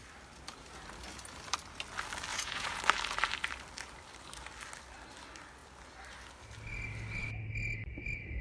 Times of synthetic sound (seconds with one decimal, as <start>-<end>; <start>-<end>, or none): 2.3-2.8